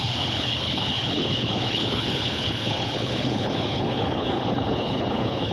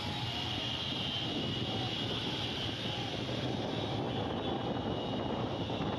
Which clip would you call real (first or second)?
second